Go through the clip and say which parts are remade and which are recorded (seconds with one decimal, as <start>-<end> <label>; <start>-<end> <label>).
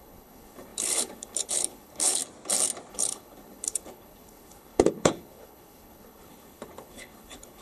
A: 0.0-2.2 remade; 2.2-2.9 recorded; 2.9-7.6 remade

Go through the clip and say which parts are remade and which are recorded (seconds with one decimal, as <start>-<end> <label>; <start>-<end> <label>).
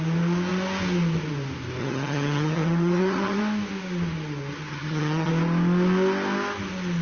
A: 0.0-1.8 recorded; 1.8-3.4 remade; 3.4-4.7 recorded; 4.7-5.3 remade; 5.3-7.0 recorded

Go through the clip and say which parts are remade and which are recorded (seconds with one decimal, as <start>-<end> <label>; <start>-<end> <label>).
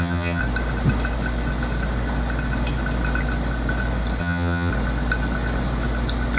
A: 0.0-0.4 remade; 0.4-4.2 recorded; 4.2-4.7 remade; 4.7-6.4 recorded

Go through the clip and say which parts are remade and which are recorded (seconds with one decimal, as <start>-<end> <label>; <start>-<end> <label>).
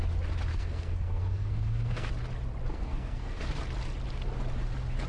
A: 0.0-0.5 recorded; 0.5-2.1 remade; 2.1-2.7 recorded; 2.7-3.4 remade; 3.4-5.1 recorded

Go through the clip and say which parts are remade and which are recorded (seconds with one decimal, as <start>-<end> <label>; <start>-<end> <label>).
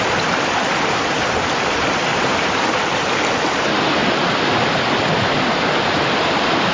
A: 0.0-2.1 recorded; 2.1-2.6 remade; 2.6-6.7 recorded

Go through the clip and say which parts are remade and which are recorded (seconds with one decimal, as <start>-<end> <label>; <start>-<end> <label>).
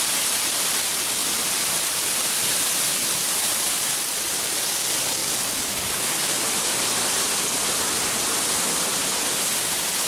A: 0.0-1.2 recorded; 1.2-2.3 remade; 2.3-3.5 recorded; 3.5-4.7 remade; 4.7-10.1 recorded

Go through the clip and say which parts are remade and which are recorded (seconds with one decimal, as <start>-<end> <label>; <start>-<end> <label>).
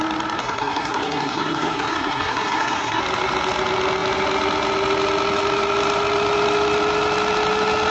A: 0.0-0.4 recorded; 0.4-3.0 remade; 3.0-7.9 recorded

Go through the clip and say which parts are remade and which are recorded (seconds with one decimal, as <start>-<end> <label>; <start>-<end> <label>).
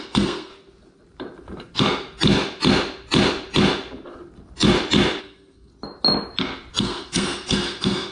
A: 0.0-0.5 remade; 0.5-5.2 recorded; 5.2-5.7 remade; 5.7-6.8 recorded; 6.8-8.1 remade